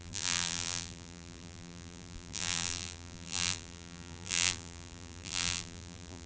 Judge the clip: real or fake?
fake